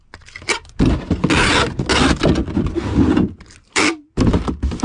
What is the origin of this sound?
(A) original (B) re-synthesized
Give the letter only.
A